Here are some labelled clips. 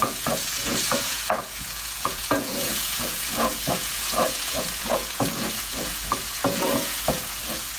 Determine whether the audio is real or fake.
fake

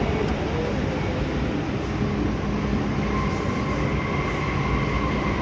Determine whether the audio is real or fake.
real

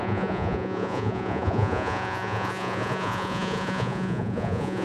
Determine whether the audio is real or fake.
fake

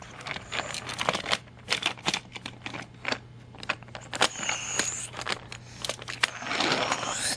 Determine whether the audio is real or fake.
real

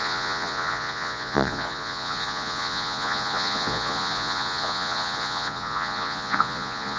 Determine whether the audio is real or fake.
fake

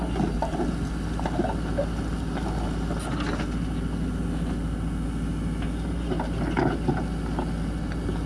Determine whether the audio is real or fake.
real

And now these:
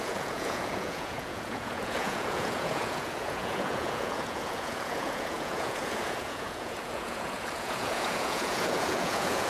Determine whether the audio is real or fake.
fake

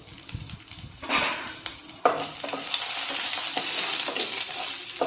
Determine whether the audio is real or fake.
real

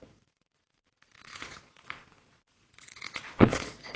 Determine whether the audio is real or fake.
fake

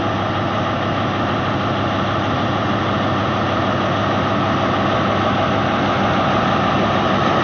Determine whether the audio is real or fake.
real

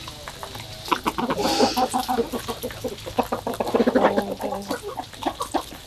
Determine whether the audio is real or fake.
real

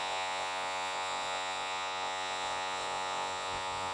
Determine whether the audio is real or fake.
fake